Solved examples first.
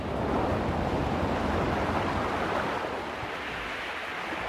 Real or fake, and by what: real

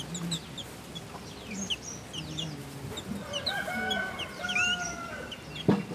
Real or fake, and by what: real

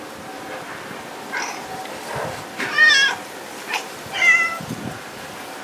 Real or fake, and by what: real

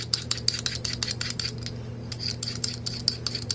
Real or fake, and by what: real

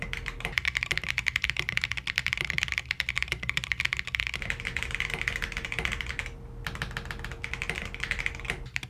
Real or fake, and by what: real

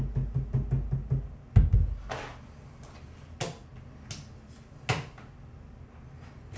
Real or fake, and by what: real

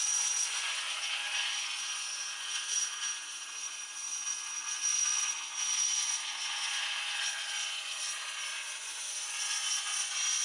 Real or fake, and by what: fake, vocoder, Vocos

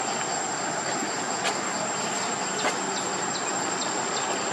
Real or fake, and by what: real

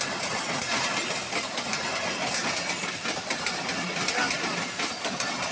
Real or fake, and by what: real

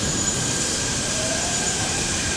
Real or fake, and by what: fake, vocoder, BigVGAN v2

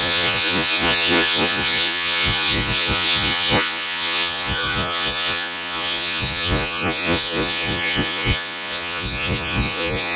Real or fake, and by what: fake, vocoder, Vocos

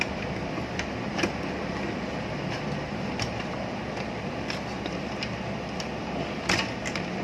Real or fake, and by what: fake, vocoder, BigVGAN v2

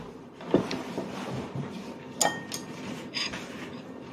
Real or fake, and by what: real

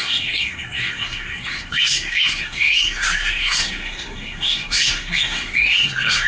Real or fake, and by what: fake, codec, SNAC